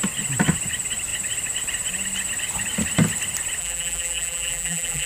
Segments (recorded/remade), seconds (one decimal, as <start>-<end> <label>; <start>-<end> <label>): 0.0-3.6 recorded; 3.6-5.1 remade